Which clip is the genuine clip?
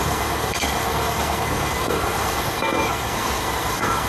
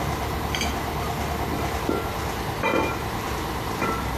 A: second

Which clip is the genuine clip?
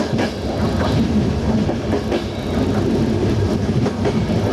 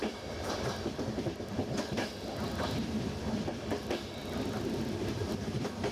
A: first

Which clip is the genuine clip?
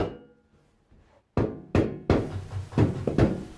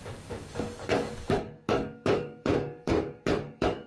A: first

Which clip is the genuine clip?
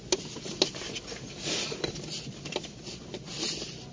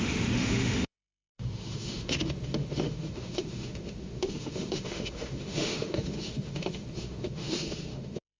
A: first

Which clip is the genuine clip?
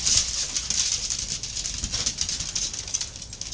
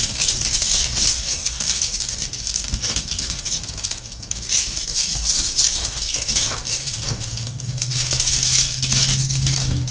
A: first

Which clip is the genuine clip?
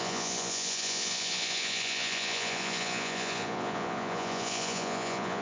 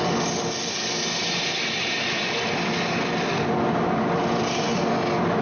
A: second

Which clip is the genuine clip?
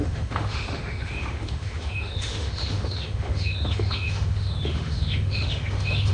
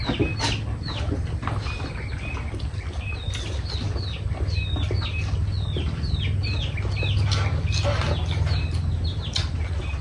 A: second